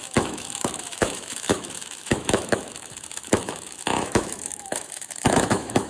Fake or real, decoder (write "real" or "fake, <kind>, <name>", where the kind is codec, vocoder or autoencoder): fake, autoencoder, DAC-VAE